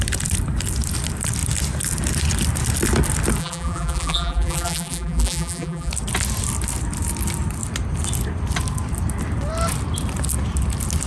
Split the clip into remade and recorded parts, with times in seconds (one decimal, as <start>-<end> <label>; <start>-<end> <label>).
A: 0.0-3.4 recorded; 3.4-5.9 remade; 5.9-11.1 recorded